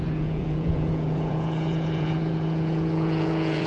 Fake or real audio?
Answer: fake